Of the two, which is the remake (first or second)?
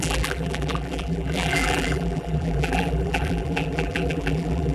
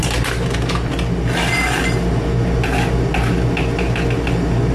first